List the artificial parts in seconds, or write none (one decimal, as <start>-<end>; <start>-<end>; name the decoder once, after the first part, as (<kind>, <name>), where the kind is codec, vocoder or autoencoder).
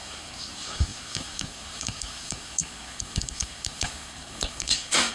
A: 0.0-5.1 (codec, SNAC)